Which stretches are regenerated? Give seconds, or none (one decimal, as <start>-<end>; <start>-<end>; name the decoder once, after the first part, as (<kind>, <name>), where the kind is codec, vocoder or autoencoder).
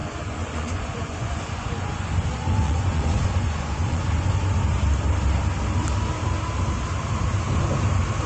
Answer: 0.0-4.3 (vocoder, Vocos)